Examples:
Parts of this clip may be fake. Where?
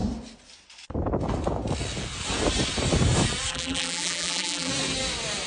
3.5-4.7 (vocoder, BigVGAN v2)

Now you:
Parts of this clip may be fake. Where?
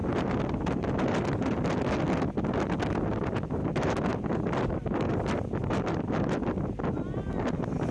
0.0-1.8 (vocoder, BigVGAN v2); 3.6-6.4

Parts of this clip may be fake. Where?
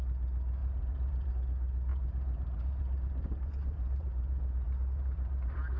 0.6-1.3 (vocoder, BigVGAN v2); 1.9-5.8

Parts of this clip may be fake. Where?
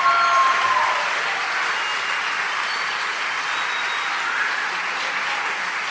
none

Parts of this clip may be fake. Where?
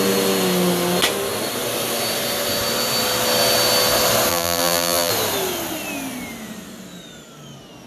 4.3-5.1 (vocoder, BigVGAN v2)